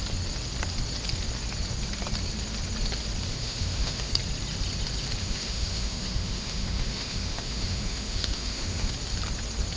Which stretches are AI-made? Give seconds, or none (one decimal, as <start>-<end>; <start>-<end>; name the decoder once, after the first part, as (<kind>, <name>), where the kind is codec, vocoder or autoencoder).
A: 3.3-4.1 (autoencoder, DAC-VAE); 5.2-8.9